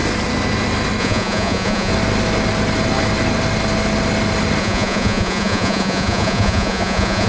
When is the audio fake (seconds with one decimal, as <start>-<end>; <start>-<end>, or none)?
1.0-1.9; 4.6-7.3